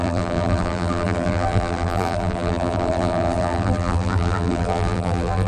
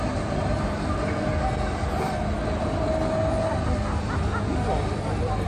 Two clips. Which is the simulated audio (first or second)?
first